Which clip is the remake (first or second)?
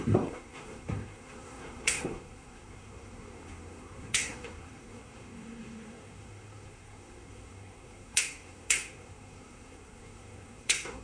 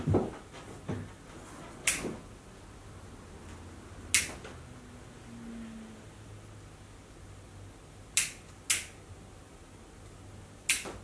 first